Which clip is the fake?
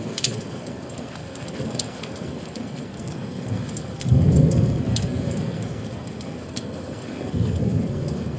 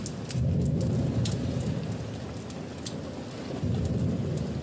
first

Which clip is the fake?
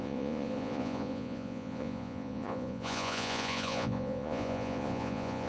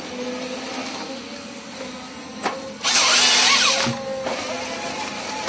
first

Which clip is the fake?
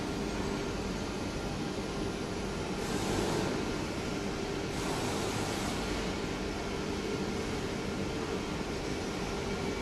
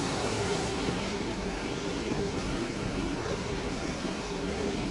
second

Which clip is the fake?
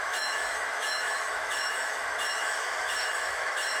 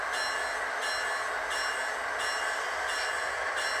first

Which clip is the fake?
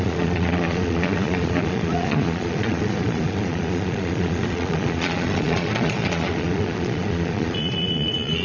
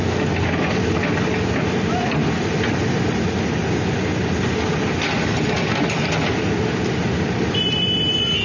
first